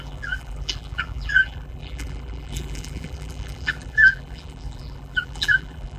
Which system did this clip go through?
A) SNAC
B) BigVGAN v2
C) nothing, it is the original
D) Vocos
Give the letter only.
B